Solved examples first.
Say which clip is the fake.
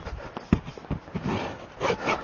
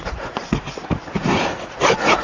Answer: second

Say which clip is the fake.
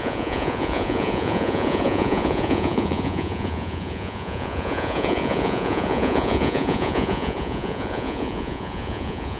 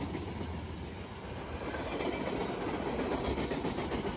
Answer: first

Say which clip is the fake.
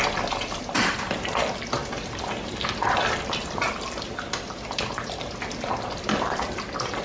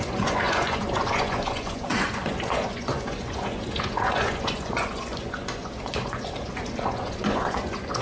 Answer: second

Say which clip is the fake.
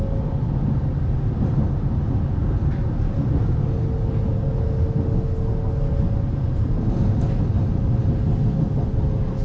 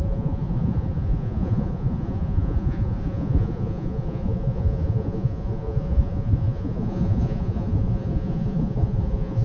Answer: second